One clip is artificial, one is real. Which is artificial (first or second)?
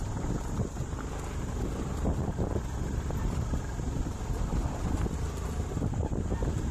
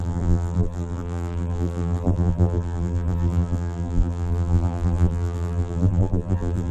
second